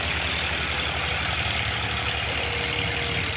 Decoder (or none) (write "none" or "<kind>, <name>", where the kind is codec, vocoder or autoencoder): none